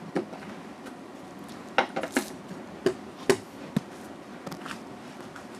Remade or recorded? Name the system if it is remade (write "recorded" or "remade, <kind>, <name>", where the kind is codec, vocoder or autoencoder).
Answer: recorded